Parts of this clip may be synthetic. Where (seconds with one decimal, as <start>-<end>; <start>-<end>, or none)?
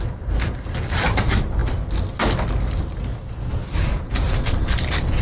none